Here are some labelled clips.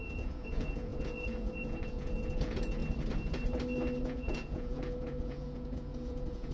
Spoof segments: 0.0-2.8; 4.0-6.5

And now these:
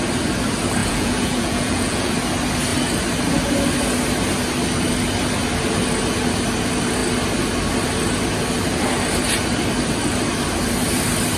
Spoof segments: 0.8-2.1

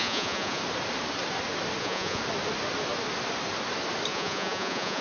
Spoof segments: 0.0-0.6; 1.8-2.2; 4.1-5.0

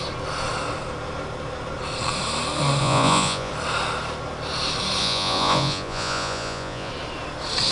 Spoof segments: 2.8-3.5; 5.0-6.9

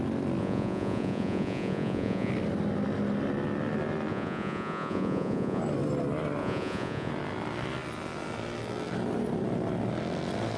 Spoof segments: 0.4-2.3; 4.1-5.6; 6.4-7.1

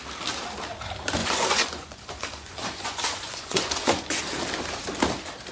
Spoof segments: 1.2-4.2